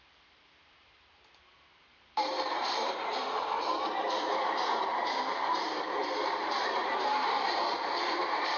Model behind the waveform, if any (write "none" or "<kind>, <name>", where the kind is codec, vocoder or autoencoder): vocoder, BigVGAN v2